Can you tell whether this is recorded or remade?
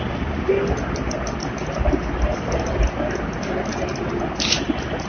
recorded